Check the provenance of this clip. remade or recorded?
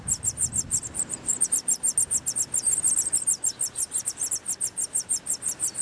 recorded